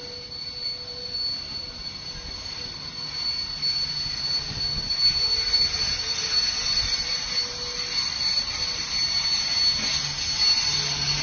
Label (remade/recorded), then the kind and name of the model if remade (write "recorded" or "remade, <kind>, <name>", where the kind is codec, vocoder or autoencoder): recorded